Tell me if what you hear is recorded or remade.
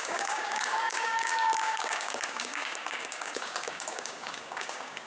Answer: remade